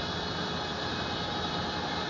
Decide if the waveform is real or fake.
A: real